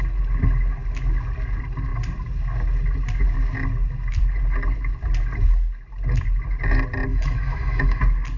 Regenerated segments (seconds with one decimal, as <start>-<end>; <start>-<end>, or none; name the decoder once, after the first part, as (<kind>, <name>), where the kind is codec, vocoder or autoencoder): 7.1-8.0 (autoencoder, DAC-VAE)